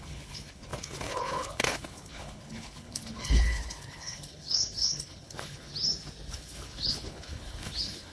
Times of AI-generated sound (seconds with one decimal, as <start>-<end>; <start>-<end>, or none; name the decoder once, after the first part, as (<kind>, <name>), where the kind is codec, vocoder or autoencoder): 0.0-5.7 (codec, HILCodec); 6.3-8.1